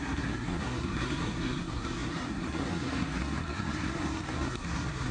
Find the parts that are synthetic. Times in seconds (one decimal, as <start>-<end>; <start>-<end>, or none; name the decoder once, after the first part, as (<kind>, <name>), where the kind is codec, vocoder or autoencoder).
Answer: 0.0-5.1 (codec, SNAC)